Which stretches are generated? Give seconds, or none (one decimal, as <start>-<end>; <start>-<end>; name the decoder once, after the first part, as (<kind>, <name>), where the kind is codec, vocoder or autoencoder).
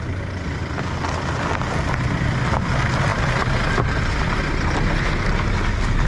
none